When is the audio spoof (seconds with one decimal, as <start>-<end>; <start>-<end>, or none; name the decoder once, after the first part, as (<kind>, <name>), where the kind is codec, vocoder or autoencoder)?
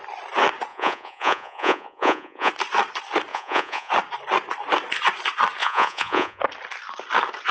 0.7-2.5 (vocoder, Vocos); 3.3-3.9; 5.6-6.4